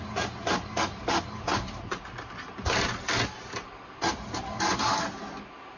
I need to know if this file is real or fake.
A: real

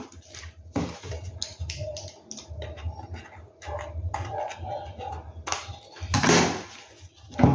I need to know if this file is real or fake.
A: real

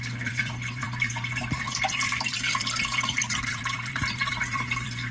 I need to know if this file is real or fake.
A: fake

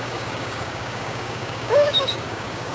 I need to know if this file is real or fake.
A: fake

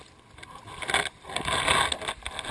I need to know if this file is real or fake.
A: real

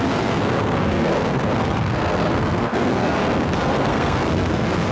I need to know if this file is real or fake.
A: fake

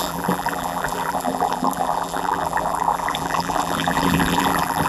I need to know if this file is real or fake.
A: fake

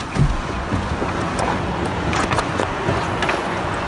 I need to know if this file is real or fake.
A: fake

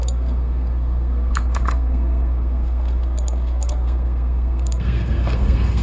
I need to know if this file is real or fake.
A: fake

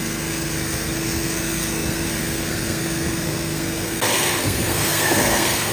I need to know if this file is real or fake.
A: fake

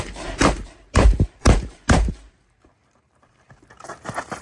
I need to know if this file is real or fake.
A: fake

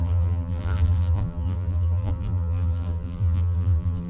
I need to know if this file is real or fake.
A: fake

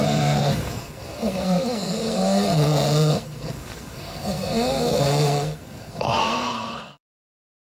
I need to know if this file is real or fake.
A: fake